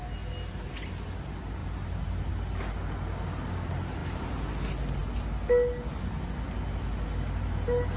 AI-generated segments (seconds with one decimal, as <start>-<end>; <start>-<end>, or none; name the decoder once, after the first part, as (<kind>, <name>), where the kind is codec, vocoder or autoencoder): 1.6-2.3 (vocoder, BigVGAN v2); 4.0-4.5